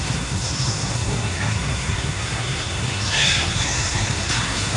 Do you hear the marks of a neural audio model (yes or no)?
yes